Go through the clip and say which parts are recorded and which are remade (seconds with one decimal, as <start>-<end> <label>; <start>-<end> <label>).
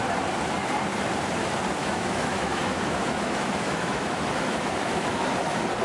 0.0-1.8 recorded; 1.8-5.3 remade; 5.3-5.8 recorded